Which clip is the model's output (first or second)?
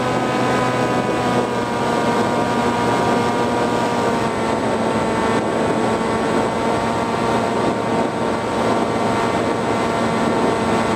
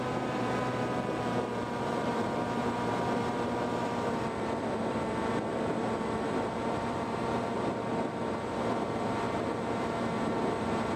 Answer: second